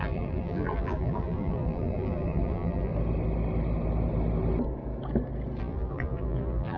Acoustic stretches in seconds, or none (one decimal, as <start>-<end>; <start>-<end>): 2.9-5.6